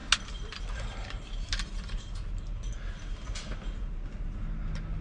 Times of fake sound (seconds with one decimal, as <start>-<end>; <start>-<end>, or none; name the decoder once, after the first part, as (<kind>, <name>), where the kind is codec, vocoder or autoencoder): none